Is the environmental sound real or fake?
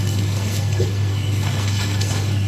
fake